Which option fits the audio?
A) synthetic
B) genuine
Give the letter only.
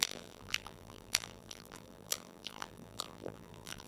A